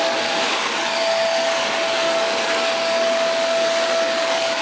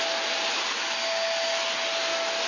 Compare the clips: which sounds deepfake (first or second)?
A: first